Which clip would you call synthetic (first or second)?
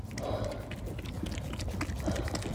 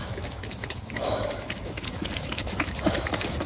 second